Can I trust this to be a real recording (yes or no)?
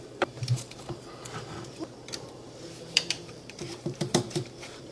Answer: no